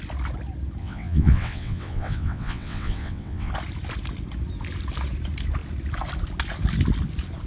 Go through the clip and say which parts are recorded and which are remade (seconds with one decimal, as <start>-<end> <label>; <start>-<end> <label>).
0.0-0.8 recorded; 0.8-3.5 remade; 3.5-7.5 recorded